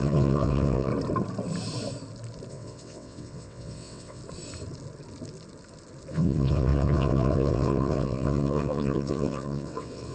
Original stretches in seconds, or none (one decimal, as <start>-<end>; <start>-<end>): 0.9-2.5; 4.2-6.1